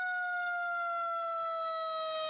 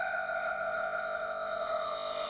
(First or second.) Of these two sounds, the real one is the first